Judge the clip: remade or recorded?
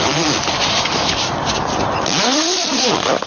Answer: recorded